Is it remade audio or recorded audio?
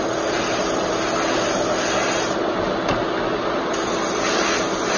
recorded